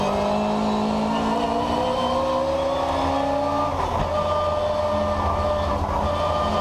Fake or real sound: real